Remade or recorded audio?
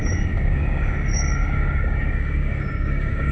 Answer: remade